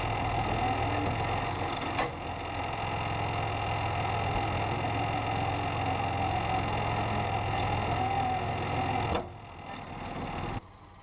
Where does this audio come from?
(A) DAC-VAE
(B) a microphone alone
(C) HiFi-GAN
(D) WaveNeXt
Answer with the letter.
B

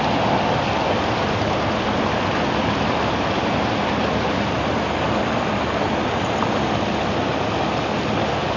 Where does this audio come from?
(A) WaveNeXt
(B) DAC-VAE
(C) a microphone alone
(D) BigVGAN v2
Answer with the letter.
C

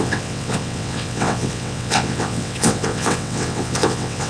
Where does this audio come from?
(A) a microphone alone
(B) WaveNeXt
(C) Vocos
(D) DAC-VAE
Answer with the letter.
B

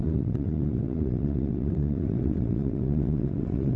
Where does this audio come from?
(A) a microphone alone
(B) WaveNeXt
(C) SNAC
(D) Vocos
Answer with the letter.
B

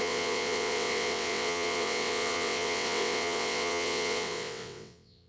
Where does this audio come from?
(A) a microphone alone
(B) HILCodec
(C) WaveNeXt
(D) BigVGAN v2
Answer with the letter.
C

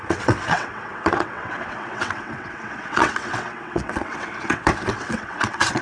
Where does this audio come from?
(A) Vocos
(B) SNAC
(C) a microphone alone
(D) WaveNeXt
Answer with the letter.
D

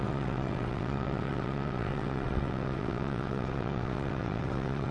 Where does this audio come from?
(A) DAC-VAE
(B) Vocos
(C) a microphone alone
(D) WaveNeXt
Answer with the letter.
D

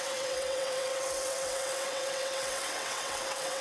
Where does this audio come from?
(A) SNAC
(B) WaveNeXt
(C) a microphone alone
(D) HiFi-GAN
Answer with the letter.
B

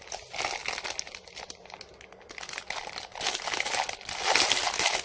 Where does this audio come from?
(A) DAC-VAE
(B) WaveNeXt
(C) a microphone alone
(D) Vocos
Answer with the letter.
C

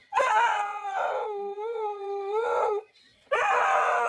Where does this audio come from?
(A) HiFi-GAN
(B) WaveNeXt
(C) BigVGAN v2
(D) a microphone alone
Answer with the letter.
B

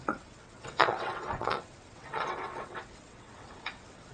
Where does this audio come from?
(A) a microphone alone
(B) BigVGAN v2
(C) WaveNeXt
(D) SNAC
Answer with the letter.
C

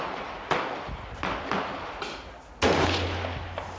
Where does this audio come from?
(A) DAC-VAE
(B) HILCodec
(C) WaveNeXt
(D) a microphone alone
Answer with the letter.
D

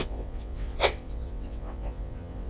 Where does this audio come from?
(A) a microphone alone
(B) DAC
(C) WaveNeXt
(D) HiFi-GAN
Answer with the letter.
C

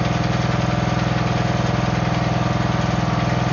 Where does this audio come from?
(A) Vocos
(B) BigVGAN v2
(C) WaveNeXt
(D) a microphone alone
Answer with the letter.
D